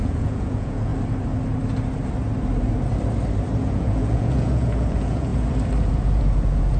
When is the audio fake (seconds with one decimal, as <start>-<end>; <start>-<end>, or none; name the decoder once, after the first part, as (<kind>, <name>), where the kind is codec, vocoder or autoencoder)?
0.0-0.9 (vocoder, Vocos); 3.7-5.3; 5.9-6.8